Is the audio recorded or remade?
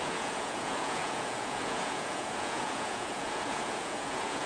remade